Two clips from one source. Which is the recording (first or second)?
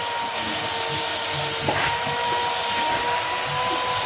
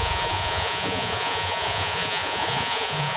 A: first